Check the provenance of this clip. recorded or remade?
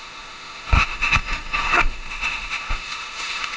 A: remade